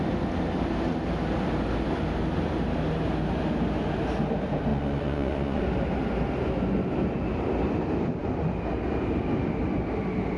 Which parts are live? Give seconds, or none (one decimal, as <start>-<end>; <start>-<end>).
0.0-4.7; 5.6-10.4